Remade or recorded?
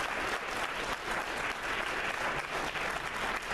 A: recorded